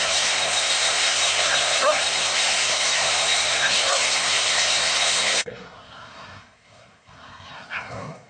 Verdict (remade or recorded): remade